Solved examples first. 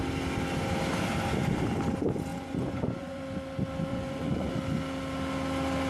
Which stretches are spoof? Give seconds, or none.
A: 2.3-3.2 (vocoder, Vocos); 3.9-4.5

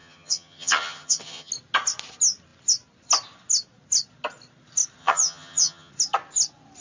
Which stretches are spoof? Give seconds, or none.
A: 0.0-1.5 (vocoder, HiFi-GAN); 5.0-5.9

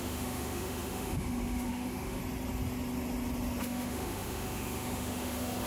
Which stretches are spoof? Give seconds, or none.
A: 0.0-2.2 (autoencoder, DAC-VAE); 3.6-5.7

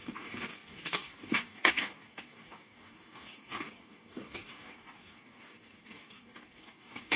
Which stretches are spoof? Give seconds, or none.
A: 0.0-7.2 (codec, DAC)